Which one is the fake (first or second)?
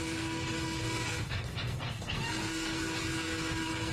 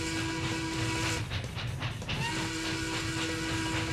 first